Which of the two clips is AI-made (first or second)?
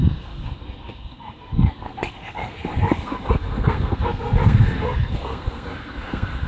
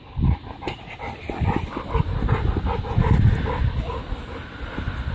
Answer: first